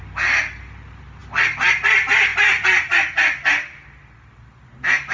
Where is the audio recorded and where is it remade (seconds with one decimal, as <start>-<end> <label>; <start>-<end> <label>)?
0.0-5.1 recorded